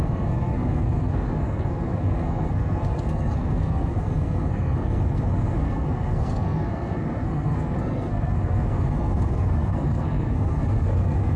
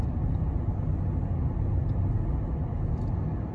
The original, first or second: second